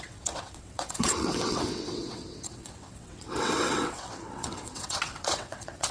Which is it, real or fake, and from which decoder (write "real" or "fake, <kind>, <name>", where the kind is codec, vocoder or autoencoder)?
fake, vocoder, WaveNeXt